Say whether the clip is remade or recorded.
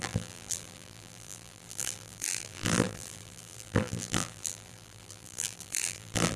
remade